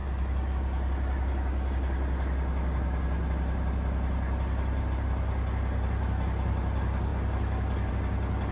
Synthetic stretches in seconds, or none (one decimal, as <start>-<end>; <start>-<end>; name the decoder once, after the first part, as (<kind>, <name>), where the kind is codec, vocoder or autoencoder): none